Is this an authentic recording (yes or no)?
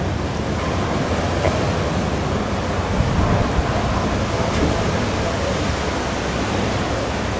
yes